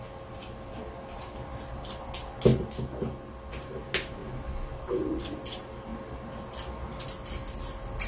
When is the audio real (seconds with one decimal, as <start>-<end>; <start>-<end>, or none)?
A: 0.0-8.1